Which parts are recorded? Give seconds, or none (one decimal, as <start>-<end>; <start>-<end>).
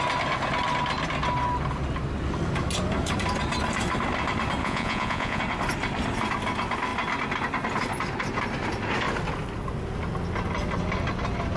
0.0-4.6; 5.4-11.6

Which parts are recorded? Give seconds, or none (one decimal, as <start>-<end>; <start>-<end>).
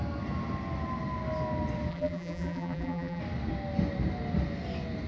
0.0-1.9; 3.2-5.1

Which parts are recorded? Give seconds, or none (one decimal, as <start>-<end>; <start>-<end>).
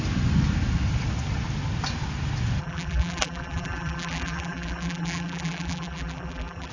0.0-2.6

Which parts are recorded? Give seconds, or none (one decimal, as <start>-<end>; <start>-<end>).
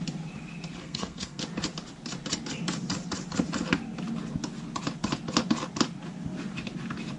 0.0-0.8; 1.4-7.2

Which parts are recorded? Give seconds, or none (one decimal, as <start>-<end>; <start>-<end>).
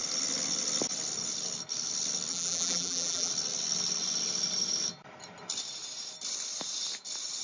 0.0-2.3; 3.3-7.4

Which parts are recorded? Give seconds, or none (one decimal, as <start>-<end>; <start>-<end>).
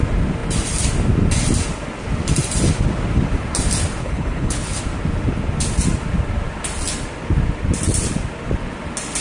0.0-4.0; 4.8-9.2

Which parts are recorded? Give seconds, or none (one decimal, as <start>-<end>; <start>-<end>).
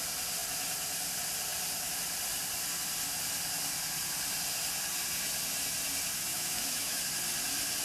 0.0-6.3; 7.0-7.8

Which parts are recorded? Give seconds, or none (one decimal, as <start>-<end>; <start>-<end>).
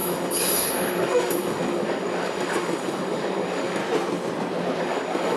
3.8-4.8